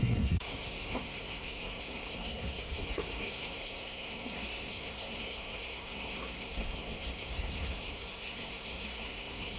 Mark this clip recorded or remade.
remade